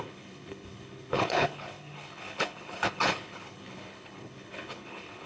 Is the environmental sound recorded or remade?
remade